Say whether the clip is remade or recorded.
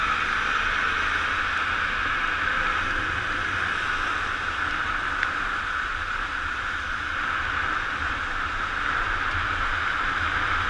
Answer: recorded